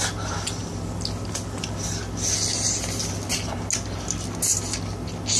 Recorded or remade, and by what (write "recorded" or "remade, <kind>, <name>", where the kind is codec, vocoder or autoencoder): recorded